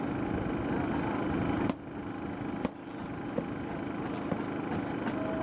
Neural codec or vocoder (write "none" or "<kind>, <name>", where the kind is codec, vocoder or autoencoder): none